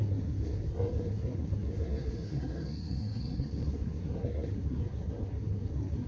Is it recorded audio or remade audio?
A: remade